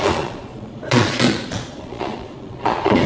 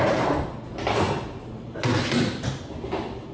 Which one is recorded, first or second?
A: second